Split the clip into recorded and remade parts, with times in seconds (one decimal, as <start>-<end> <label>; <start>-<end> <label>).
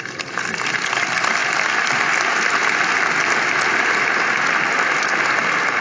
0.0-5.8 recorded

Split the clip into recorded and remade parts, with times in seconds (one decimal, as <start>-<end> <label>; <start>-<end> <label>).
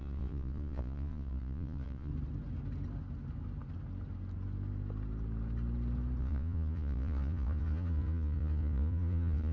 0.0-2.1 remade; 2.1-6.2 recorded; 6.2-9.5 remade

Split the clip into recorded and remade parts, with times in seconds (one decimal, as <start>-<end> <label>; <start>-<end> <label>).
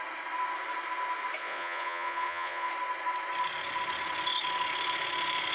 0.0-1.4 recorded; 1.4-2.7 remade; 2.7-5.5 recorded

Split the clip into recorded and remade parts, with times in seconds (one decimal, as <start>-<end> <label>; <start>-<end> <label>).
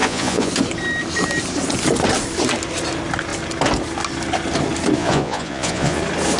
0.0-0.5 remade; 0.5-5.0 recorded; 5.0-6.0 remade; 6.0-6.4 recorded